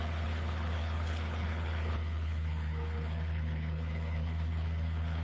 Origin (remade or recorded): remade